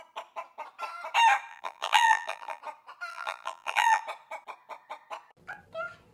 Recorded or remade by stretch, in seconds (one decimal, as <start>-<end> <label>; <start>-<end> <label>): 0.0-1.5 recorded; 1.5-2.6 remade; 2.6-3.1 recorded; 3.1-4.0 remade; 4.0-6.1 recorded